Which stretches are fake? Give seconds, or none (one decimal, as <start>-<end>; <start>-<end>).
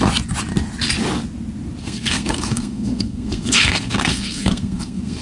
1.8-5.2